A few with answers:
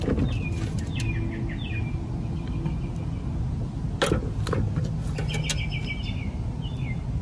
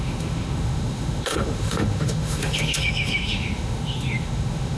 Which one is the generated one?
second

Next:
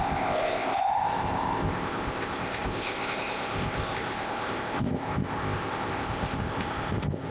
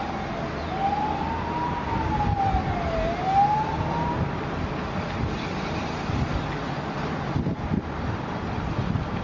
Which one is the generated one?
first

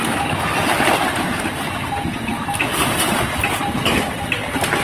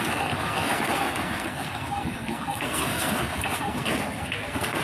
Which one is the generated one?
second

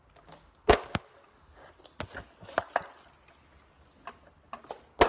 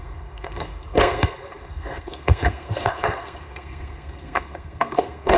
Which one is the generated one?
second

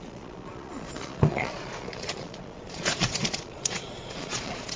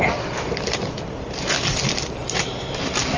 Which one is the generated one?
first